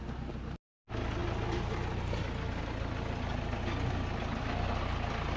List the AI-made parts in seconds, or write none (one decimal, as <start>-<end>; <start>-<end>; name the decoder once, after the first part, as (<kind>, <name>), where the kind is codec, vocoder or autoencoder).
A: none